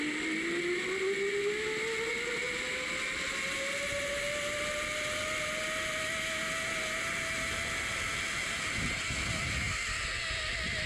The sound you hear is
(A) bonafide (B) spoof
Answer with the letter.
A